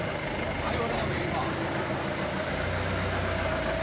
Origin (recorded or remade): recorded